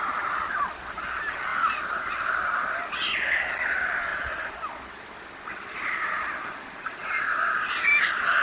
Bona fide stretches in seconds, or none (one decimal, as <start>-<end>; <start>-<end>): 0.0-8.4